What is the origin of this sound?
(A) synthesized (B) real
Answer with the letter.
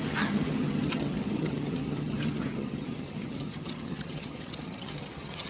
A